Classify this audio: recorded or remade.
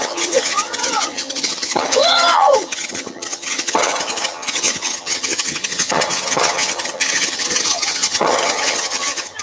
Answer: remade